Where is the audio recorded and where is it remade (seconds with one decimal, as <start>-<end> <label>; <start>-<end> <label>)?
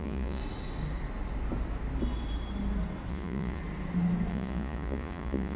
0.0-0.4 remade; 0.4-3.1 recorded; 3.1-3.6 remade; 3.6-4.3 recorded; 4.3-5.6 remade